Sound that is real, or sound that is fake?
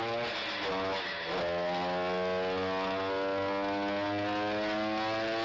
real